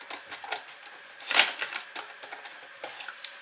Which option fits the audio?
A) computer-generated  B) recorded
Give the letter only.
B